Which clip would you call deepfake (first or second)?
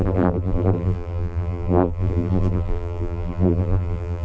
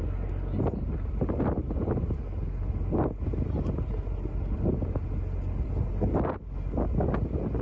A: first